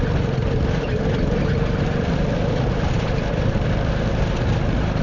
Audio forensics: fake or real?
real